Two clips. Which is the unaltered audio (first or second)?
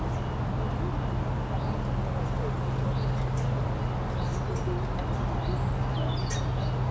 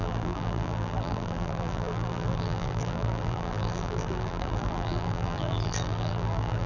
first